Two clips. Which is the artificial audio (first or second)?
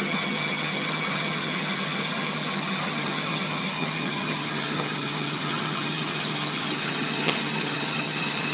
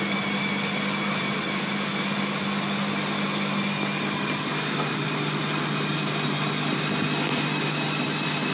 first